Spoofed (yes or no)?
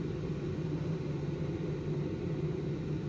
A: no